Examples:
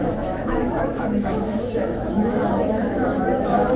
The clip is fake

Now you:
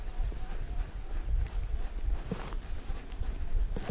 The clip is real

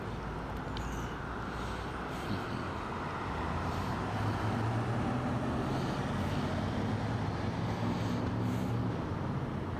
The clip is real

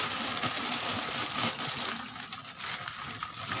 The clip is real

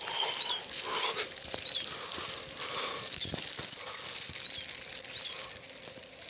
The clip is real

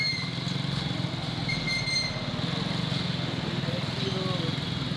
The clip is real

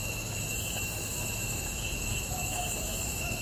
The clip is fake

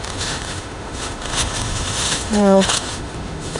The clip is fake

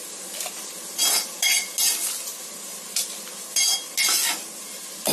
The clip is real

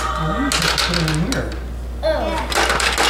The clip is real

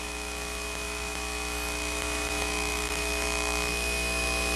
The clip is fake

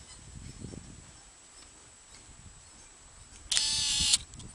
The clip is real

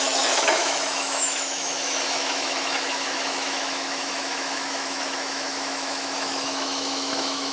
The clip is fake